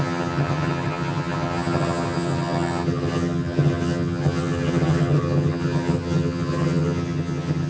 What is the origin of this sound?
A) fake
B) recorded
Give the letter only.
A